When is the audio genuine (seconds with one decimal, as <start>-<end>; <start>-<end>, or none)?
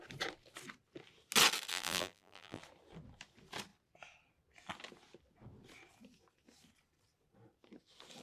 0.0-1.7; 2.6-8.2